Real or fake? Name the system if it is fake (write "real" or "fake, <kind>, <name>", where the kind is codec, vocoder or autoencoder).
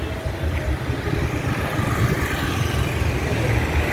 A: real